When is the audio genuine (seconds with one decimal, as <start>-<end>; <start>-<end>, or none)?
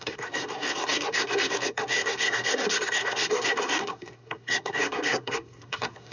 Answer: none